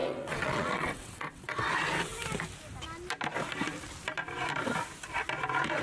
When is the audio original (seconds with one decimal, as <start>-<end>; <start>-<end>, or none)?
1.7-5.8